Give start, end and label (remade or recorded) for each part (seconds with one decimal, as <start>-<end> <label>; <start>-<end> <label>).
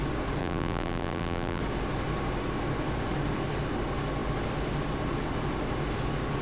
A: 0.0-0.4 recorded; 0.4-1.6 remade; 1.6-6.4 recorded